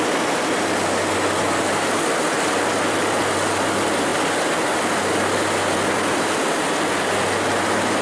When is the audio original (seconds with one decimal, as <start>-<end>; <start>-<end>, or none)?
0.0-8.0